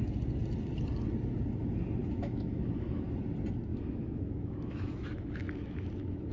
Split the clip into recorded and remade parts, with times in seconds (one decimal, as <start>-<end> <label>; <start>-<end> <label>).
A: 0.0-2.0 recorded; 2.0-3.2 remade; 3.2-3.7 recorded; 3.7-6.3 remade